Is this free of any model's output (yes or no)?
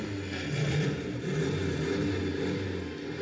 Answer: yes